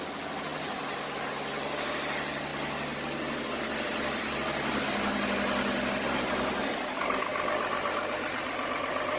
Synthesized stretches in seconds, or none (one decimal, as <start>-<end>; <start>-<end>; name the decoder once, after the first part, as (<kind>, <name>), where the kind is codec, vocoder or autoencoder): none